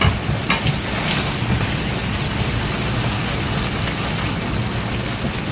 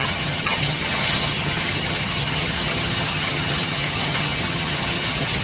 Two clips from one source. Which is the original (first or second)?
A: first